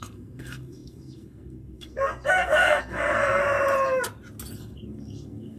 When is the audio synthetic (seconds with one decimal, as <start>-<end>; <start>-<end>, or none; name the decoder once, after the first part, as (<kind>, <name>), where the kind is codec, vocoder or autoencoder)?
0.0-3.4 (codec, SNAC); 4.5-5.6